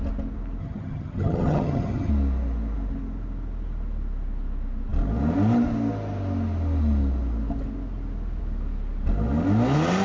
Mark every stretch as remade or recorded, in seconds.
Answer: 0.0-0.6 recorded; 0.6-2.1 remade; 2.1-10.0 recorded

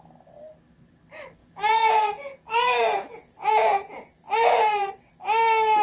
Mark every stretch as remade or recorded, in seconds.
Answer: 0.0-1.4 recorded; 1.4-4.9 remade; 4.9-5.8 recorded

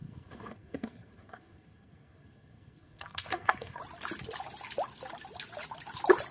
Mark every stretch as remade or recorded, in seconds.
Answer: 0.0-3.8 remade; 3.8-6.3 recorded

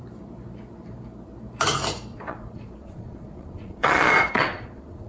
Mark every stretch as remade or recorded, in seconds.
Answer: 0.0-2.1 recorded; 2.1-5.1 remade

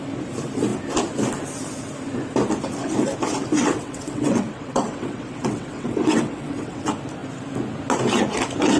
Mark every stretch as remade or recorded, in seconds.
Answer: 0.0-3.6 recorded; 3.6-6.8 remade; 6.8-8.8 recorded